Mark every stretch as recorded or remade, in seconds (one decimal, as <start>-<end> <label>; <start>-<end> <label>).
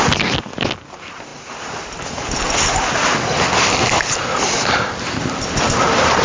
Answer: 0.0-6.2 recorded